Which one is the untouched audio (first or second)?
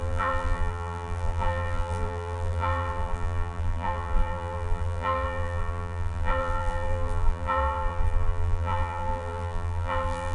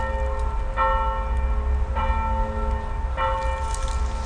second